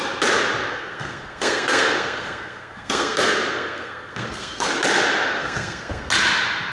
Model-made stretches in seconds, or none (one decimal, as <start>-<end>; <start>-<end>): 0.7-4.7; 5.3-6.1